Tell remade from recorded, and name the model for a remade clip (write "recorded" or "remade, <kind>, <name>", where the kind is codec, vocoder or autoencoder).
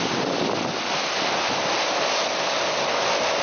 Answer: recorded